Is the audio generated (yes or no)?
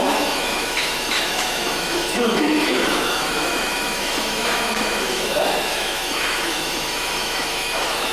yes